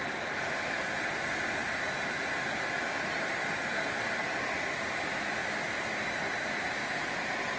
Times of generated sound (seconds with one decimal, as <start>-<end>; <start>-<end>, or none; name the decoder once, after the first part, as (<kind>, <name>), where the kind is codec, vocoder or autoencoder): none